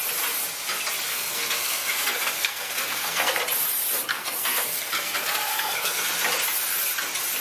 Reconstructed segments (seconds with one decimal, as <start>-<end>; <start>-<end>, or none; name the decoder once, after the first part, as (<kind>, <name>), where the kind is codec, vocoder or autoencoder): 1.1-3.4 (codec, SNAC); 4.1-6.1